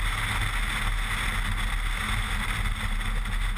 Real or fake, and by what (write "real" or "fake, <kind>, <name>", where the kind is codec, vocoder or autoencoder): real